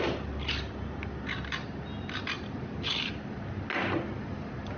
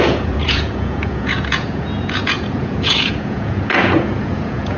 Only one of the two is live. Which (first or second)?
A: first